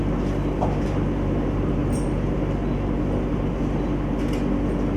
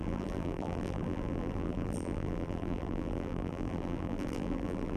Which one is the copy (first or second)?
second